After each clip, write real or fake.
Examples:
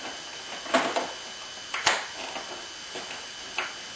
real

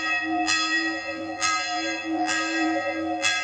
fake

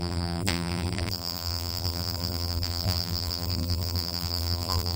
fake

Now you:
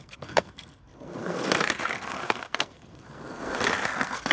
fake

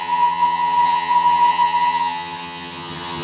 fake